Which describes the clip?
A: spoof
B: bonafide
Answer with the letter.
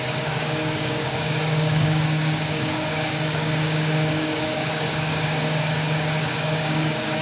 A